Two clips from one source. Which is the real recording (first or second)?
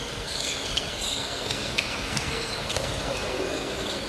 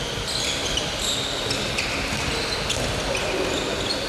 second